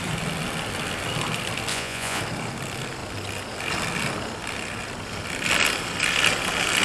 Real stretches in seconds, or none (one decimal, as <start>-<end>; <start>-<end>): 0.0-1.7; 2.2-6.8